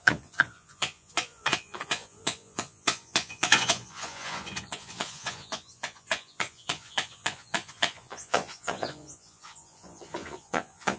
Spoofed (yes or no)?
yes